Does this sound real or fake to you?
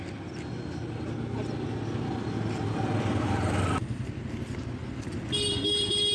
real